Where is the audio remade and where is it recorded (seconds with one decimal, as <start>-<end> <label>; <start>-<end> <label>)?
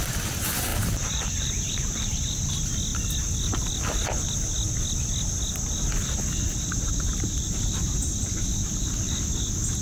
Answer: 0.0-0.7 recorded; 0.7-2.5 remade; 2.5-9.8 recorded